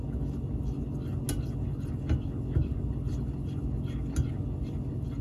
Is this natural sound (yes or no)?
yes